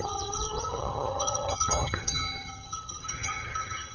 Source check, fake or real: fake